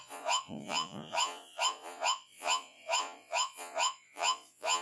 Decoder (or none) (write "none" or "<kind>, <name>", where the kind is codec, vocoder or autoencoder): vocoder, Vocos